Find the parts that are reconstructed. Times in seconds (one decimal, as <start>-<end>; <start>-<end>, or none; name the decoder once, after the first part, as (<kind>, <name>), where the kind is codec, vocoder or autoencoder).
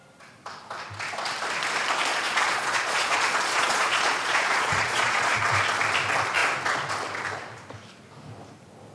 2.1-5.4 (vocoder, Vocos)